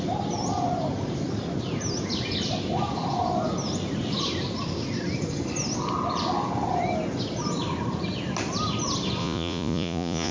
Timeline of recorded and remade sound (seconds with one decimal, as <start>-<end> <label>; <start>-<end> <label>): 0.0-9.2 recorded; 9.2-10.3 remade